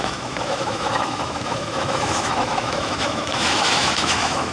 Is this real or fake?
fake